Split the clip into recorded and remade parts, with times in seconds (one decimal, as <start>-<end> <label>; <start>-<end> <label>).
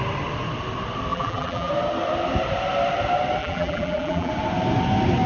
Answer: 0.0-1.1 recorded; 1.1-1.7 remade; 1.7-3.4 recorded; 3.4-4.3 remade; 4.3-5.3 recorded